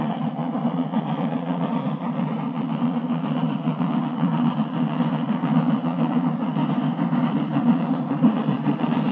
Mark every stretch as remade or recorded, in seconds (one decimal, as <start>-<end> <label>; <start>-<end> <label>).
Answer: 0.0-6.6 remade; 6.6-7.2 recorded; 7.2-9.1 remade